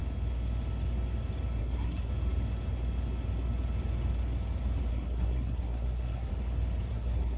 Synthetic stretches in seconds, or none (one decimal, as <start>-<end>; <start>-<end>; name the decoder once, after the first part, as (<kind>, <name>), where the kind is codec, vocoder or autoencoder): 1.6-2.1 (codec, SNAC); 4.9-6.3; 6.9-7.4